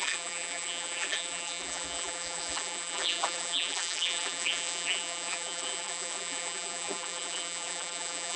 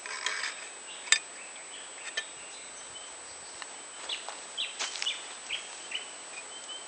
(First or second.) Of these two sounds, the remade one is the first